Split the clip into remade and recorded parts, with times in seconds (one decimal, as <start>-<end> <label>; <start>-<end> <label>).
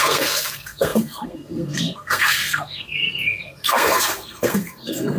0.0-5.2 remade